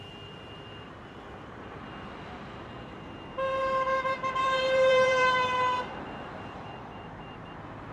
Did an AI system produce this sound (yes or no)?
yes